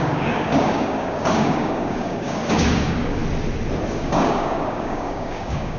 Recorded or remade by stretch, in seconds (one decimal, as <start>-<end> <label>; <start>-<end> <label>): 0.0-3.2 remade; 3.2-3.9 recorded; 3.9-5.8 remade